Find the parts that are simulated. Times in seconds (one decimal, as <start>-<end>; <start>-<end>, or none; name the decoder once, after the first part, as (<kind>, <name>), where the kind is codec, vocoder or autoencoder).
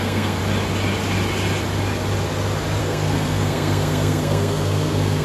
0.0-0.4 (codec, SNAC); 2.8-5.2